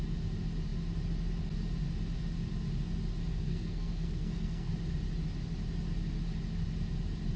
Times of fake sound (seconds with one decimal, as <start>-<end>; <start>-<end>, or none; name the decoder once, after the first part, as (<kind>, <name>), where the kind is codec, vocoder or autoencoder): 3.3-4.7 (codec, SNAC)

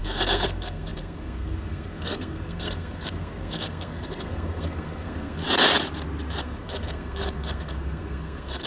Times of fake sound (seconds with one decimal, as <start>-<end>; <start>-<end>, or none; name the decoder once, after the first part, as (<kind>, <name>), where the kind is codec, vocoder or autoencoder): 0.0-5.4 (codec, SNAC); 6.4-8.7

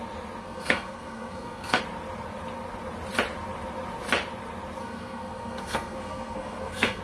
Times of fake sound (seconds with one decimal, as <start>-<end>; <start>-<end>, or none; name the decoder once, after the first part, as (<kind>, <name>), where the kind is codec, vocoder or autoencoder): 0.4-1.8 (codec, SNAC); 4.8-7.0

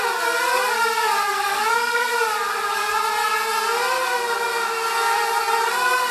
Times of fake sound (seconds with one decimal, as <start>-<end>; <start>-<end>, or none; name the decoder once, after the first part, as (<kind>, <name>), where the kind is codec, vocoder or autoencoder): 1.3-2.1 (codec, SNAC)

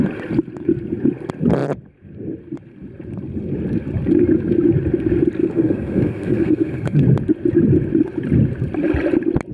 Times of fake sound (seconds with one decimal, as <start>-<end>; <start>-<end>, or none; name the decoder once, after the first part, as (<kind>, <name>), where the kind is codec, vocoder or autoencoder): 5.4-7.0 (codec, SNAC)

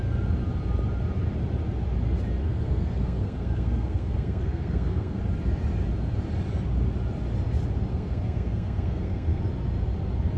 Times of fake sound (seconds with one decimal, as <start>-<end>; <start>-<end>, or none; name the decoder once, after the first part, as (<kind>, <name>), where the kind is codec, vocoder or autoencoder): 2.4-5.2 (codec, SNAC); 7.9-9.4

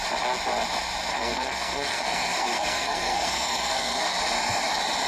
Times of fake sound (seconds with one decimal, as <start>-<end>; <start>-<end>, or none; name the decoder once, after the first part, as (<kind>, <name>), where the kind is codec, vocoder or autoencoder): 1.1-4.2 (codec, SNAC)

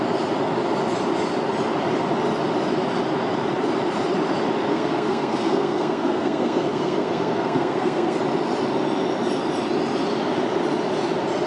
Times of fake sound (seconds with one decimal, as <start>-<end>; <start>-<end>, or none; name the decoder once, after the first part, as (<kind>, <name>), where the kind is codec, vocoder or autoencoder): 4.7-8.2 (codec, SNAC)